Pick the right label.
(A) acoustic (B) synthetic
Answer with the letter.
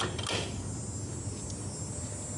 A